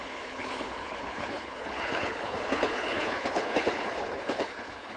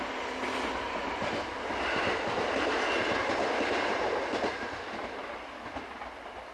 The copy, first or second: first